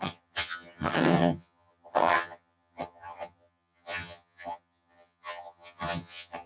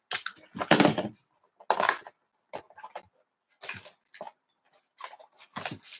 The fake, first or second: first